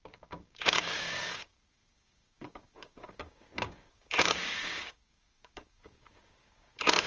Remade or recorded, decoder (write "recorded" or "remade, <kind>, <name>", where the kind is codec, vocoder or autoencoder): remade, codec, DAC